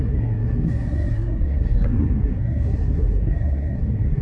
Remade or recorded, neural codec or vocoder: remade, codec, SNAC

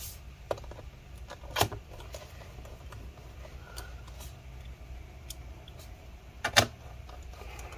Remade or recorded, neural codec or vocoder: recorded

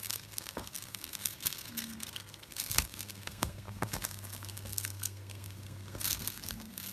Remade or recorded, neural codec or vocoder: remade, codec, SNAC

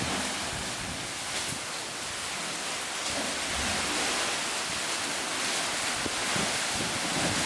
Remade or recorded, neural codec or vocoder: recorded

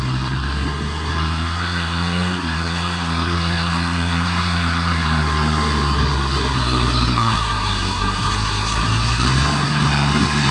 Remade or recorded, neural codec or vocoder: remade, codec, SNAC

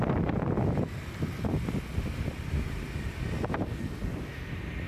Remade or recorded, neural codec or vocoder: recorded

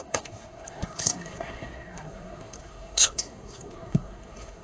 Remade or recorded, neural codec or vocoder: remade, codec, SNAC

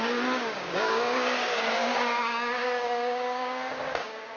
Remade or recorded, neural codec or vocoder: remade, codec, DAC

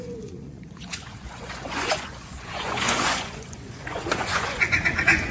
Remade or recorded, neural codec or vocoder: remade, vocoder, Vocos